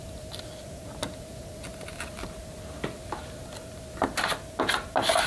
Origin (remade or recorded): recorded